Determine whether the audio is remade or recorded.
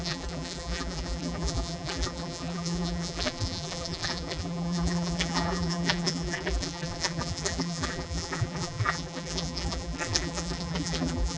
remade